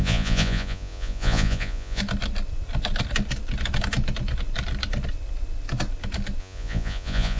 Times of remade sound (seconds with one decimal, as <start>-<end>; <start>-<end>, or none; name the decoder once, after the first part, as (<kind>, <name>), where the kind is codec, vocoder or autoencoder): 0.0-2.0 (vocoder, Vocos); 6.4-7.4